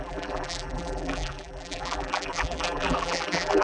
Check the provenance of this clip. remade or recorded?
remade